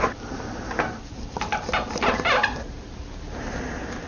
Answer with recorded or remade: recorded